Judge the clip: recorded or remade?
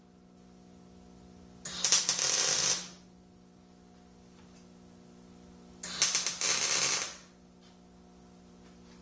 recorded